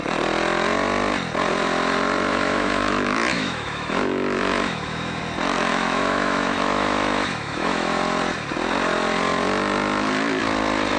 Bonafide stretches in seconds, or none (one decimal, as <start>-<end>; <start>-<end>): 0.0-2.3; 5.2-5.7; 8.0-11.0